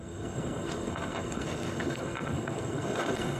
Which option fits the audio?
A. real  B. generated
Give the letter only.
B